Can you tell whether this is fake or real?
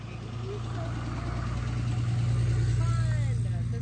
real